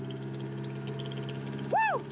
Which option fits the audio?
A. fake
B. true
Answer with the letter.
B